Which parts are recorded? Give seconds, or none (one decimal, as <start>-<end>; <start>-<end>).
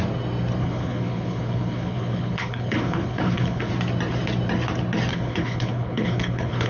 0.0-0.6; 3.7-5.1